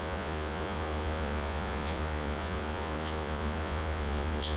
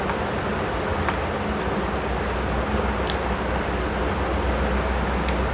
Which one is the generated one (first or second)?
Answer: first